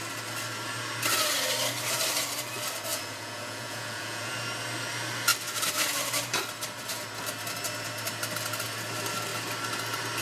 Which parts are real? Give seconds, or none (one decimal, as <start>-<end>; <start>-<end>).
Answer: 0.0-2.9; 4.3-10.2